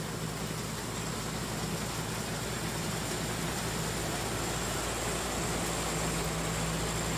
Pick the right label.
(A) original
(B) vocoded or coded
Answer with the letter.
A